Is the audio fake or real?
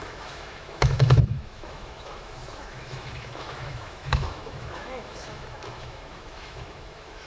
fake